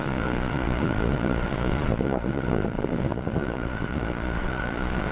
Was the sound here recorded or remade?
remade